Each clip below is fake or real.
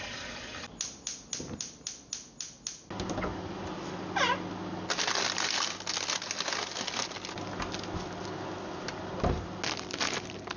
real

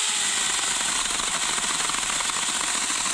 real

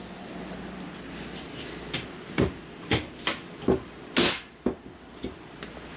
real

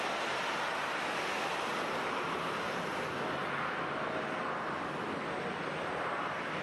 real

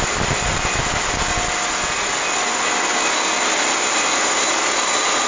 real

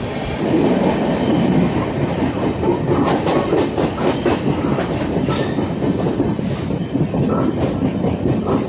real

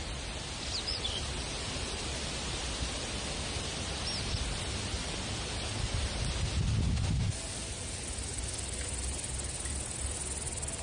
real